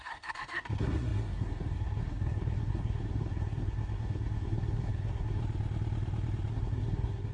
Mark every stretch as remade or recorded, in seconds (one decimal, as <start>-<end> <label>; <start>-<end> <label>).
0.0-5.4 remade; 5.4-6.5 recorded; 6.5-7.3 remade